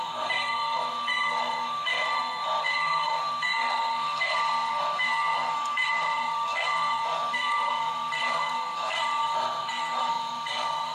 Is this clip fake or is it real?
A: fake